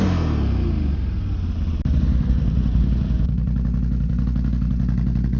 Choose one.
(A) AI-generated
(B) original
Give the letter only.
B